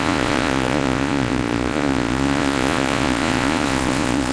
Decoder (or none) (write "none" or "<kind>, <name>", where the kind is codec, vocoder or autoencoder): vocoder, Vocos